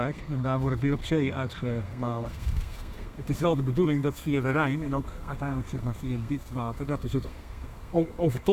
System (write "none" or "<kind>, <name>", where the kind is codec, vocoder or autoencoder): codec, SNAC